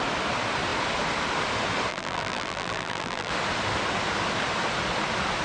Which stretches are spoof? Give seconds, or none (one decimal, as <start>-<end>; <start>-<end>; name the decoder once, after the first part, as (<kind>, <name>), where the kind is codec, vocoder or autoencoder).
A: 1.9-3.3 (vocoder, BigVGAN v2)